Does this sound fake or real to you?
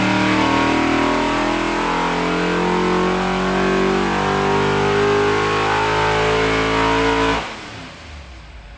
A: real